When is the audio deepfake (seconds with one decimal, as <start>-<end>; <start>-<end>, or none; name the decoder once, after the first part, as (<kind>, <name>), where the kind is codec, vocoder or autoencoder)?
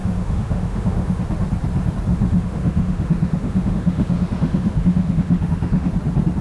0.0-1.2 (autoencoder, DAC-VAE); 2.1-5.9